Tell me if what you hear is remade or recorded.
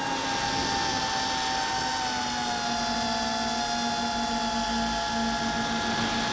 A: recorded